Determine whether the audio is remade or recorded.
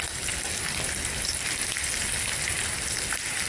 recorded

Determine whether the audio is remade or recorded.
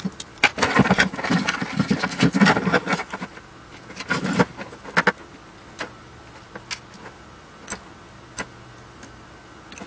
recorded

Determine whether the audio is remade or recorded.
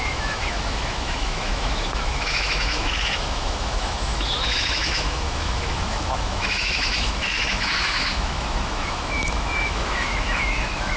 remade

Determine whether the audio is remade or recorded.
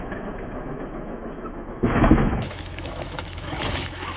remade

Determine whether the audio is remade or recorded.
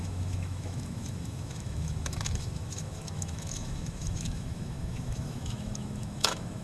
remade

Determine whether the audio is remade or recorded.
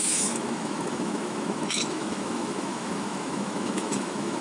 remade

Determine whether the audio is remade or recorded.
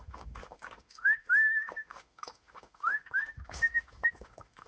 remade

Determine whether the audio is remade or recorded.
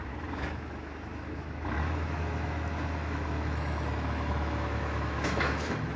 remade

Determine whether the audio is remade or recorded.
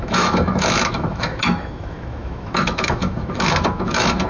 remade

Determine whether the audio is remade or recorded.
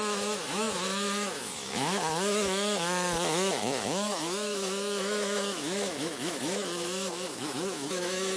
remade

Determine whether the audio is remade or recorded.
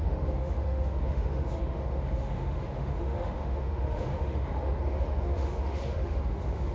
remade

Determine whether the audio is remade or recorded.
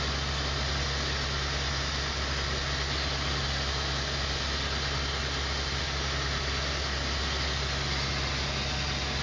recorded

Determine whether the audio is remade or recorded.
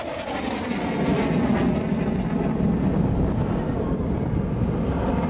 recorded